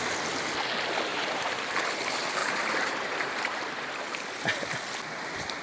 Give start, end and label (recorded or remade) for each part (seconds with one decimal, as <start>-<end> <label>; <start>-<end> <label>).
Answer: 0.0-1.1 recorded; 1.1-1.6 remade; 1.6-2.4 recorded; 2.4-4.2 remade; 4.2-5.6 recorded